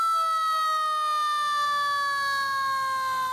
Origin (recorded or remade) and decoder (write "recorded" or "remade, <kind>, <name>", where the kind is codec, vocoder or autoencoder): recorded